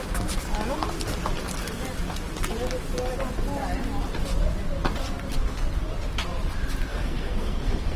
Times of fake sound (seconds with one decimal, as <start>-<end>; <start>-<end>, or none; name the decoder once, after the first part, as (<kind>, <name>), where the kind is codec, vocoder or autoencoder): 6.9-8.0 (codec, SNAC)